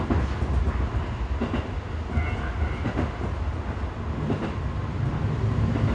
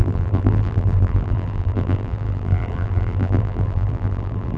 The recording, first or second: first